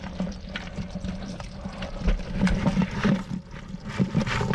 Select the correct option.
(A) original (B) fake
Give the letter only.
A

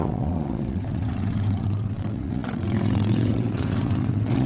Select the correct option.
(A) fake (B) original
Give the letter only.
A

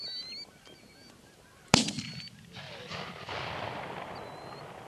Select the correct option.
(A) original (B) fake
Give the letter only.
A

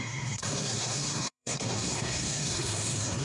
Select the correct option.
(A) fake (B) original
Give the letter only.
A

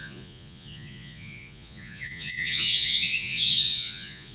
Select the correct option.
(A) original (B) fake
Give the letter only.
B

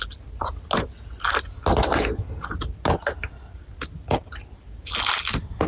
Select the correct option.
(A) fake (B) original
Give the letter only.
B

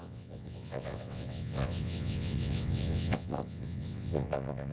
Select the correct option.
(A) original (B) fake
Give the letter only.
B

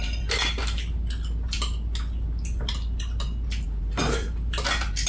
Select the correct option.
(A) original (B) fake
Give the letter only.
A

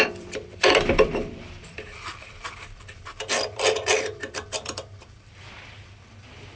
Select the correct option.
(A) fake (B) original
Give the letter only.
A